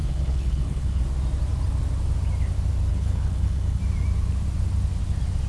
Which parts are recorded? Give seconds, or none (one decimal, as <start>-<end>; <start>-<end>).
1.0-2.9; 3.8-5.5